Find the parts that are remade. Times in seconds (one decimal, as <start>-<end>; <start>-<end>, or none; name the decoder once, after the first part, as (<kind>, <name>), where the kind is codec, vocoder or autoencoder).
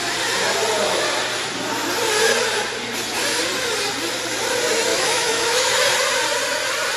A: 4.9-5.7 (autoencoder, DAC-VAE)